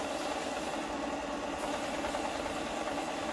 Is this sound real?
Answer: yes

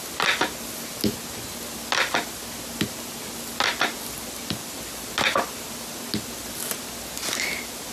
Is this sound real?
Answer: yes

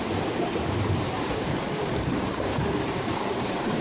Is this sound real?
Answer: no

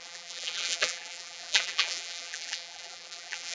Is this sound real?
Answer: no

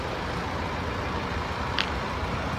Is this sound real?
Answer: yes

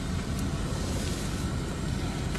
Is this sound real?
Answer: yes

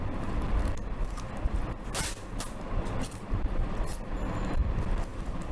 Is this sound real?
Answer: yes